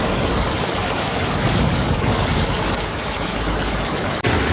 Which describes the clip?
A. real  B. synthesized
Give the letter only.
B